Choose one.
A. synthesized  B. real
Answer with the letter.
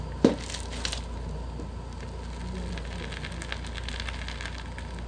B